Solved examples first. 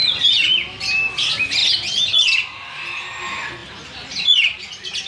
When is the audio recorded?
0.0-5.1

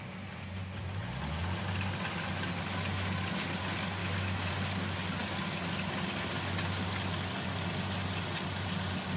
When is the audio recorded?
0.0-4.0; 4.5-9.2

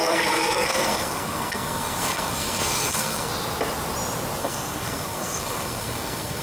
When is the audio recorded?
3.3-4.4

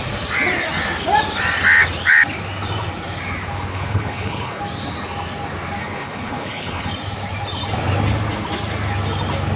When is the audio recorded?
0.0-3.7; 4.6-5.8; 6.9-9.6

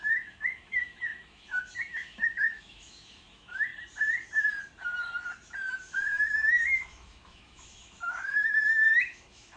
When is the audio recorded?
3.7-5.7